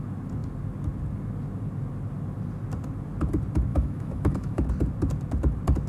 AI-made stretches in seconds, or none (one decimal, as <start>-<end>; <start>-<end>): 3.7-4.7